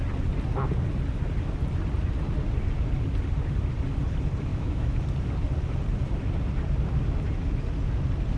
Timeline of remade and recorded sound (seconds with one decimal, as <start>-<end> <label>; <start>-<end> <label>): 0.0-4.5 recorded; 4.5-5.0 remade; 5.0-8.4 recorded